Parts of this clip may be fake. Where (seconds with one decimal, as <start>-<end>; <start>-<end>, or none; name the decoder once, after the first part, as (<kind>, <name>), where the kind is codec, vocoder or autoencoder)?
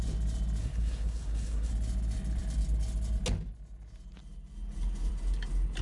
0.6-1.7 (codec, SNAC)